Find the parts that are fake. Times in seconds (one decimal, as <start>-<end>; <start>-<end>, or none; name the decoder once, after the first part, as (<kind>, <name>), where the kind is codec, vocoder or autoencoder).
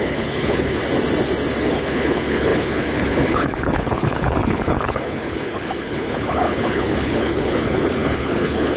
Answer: 0.0-0.8 (codec, HILCodec); 1.6-8.8